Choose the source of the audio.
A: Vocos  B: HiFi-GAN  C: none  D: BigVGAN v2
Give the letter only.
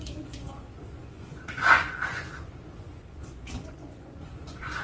A